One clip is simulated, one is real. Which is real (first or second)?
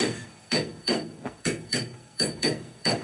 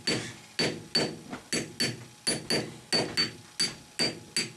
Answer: second